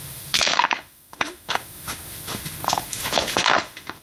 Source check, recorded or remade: remade